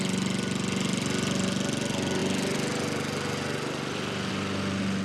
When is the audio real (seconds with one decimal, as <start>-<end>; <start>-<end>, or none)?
0.0-5.0